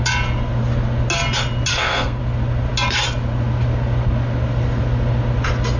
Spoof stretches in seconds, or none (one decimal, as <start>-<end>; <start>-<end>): 1.7-2.2